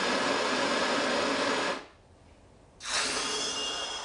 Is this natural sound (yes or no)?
yes